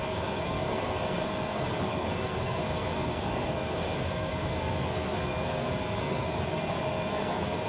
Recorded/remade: remade